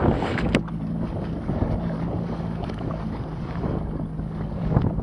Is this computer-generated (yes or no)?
yes